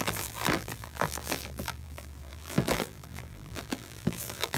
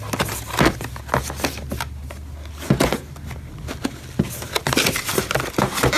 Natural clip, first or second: second